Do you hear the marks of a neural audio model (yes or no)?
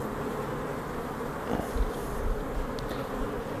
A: no